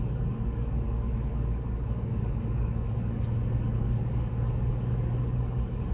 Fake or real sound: fake